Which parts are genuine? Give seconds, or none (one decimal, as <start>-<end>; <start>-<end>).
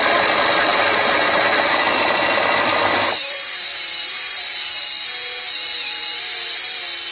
0.0-0.7; 2.4-3.2; 4.8-5.7; 6.6-7.1